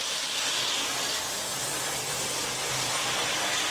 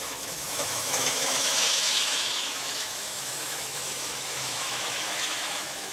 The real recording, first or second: first